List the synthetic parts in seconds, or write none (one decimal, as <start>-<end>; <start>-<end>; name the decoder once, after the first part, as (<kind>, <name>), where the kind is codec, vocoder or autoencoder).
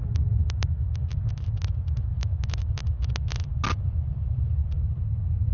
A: none